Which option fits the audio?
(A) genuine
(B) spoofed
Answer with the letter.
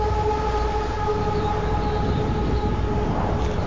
A